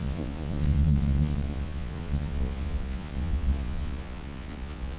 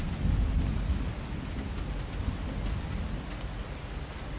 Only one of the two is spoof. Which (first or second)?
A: first